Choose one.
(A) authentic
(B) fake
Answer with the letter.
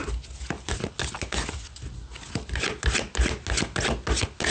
A